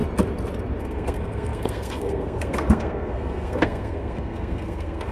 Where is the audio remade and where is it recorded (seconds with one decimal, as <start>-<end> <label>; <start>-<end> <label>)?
0.0-0.8 recorded; 0.8-5.1 remade